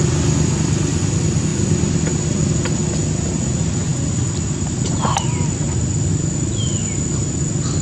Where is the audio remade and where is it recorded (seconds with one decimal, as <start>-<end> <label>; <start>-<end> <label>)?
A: 0.0-7.8 recorded